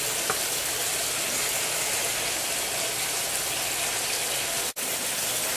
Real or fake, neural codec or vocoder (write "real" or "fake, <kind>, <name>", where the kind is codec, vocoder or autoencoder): real